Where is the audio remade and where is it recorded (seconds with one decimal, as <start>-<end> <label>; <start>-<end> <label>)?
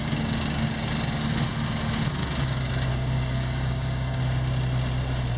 0.0-0.7 remade; 0.7-2.2 recorded; 2.2-4.2 remade; 4.2-5.4 recorded